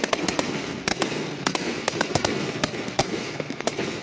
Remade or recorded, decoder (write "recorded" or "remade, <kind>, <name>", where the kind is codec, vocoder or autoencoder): remade, codec, SNAC